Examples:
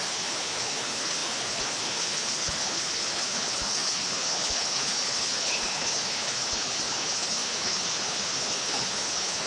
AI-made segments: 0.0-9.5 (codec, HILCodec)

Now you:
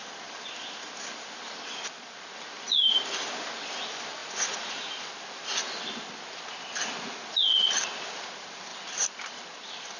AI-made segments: 4.2-5.0 (vocoder, Vocos)

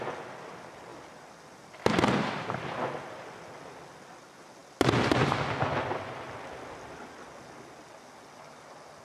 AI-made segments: none

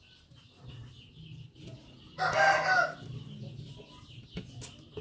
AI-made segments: none

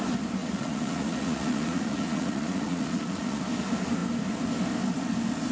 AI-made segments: 0.4-3.4 (vocoder, Vocos)

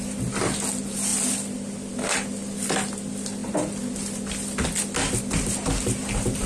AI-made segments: none

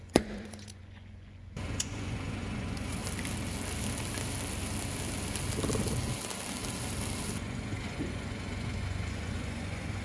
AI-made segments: 0.0-3.0 (vocoder, Vocos); 7.4-10.0

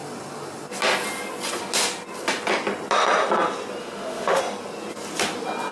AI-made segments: 3.8-4.4 (autoencoder, DAC-VAE)